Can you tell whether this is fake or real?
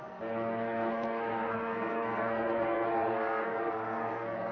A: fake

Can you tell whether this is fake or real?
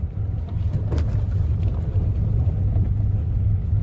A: real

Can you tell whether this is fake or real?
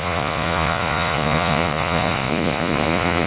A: fake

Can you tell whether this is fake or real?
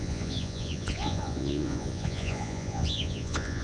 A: fake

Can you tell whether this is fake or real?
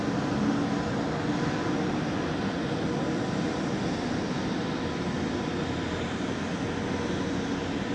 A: real